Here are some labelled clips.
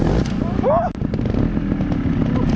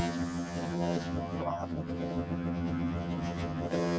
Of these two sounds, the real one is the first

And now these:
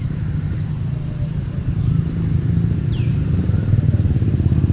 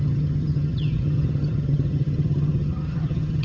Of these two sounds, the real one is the first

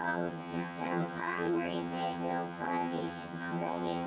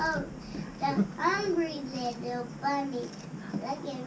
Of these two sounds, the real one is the second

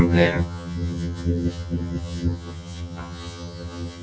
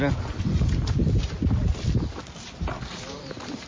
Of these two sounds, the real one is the second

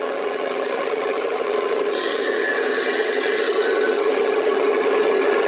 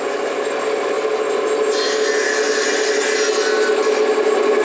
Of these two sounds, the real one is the second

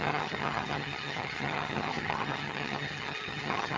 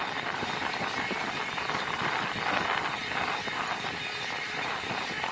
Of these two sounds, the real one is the second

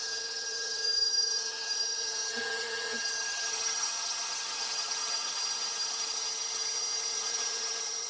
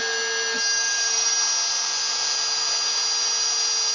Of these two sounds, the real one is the second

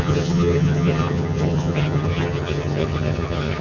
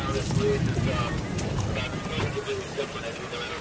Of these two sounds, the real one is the second